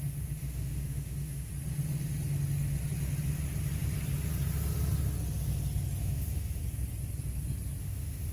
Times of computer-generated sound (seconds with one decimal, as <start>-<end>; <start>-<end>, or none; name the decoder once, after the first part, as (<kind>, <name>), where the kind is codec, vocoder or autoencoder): 0.0-1.5 (autoencoder, DAC-VAE); 6.0-6.6; 7.8-8.3